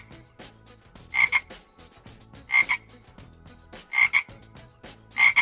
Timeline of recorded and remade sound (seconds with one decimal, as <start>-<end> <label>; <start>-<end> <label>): 0.0-5.4 recorded